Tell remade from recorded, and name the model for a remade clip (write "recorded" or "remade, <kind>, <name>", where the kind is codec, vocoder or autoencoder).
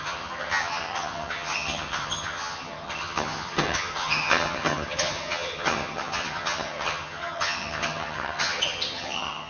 remade, vocoder, HiFi-GAN